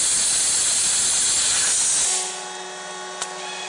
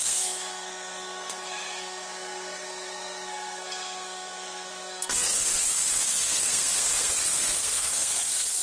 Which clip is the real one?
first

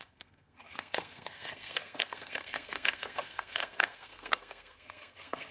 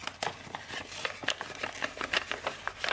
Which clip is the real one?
second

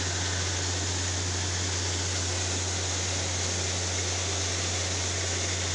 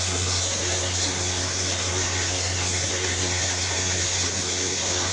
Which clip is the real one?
first